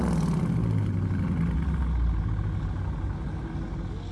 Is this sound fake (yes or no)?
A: no